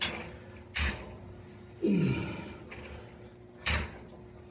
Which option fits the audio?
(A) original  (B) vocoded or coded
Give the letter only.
A